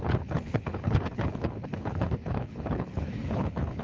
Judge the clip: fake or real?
fake